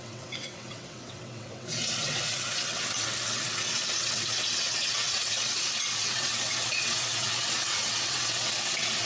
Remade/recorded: remade